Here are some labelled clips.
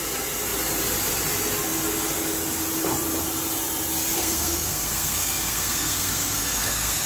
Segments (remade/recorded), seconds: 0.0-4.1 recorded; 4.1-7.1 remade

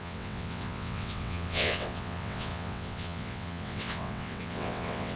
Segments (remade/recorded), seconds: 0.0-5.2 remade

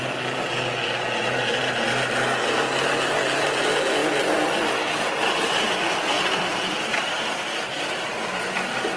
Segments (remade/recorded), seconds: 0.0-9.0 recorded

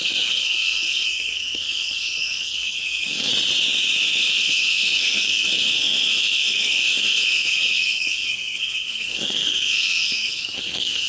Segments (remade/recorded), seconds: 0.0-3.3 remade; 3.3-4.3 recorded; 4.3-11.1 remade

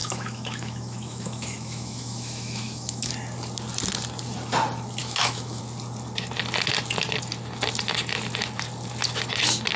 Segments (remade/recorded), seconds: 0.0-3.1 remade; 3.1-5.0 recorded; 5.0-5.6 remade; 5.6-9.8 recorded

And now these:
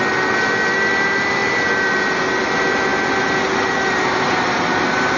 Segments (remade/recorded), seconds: 0.0-5.2 recorded

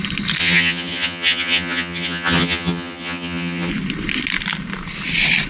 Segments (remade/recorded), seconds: 0.0-0.4 recorded; 0.4-3.7 remade; 3.7-5.5 recorded

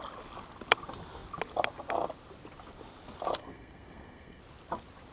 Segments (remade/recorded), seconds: 0.0-3.4 recorded; 3.4-4.4 remade; 4.4-5.1 recorded